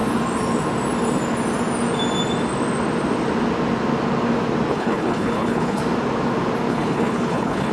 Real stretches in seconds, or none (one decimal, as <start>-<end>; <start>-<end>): 0.0-4.7; 5.8-6.7